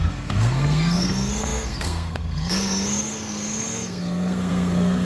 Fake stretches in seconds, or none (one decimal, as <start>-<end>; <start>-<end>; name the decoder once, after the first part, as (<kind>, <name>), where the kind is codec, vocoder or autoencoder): 0.0-5.0 (codec, SNAC)